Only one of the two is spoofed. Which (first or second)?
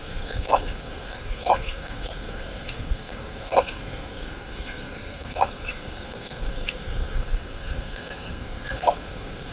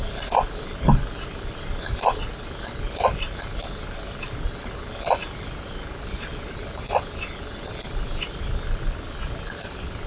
first